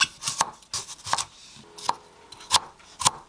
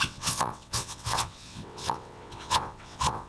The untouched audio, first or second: first